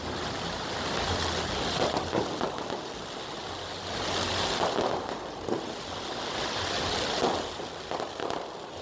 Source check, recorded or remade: recorded